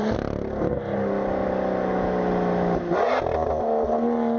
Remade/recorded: recorded